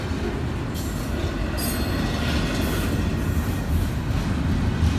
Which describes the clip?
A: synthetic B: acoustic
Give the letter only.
B